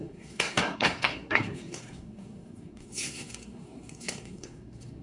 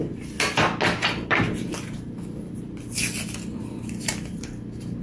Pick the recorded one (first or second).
second